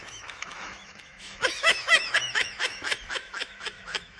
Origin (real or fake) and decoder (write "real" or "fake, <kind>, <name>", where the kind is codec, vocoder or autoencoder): fake, autoencoder, DAC-VAE